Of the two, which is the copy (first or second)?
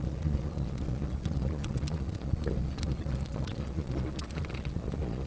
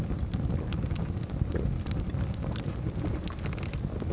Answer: first